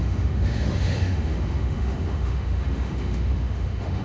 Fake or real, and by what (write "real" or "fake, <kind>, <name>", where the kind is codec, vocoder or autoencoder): fake, autoencoder, DAC-VAE